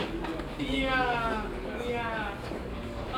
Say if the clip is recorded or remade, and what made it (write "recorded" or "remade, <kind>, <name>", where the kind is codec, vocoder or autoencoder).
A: remade, codec, DAC